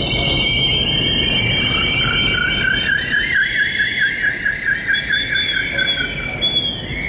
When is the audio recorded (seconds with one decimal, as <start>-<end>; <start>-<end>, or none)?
0.0-7.1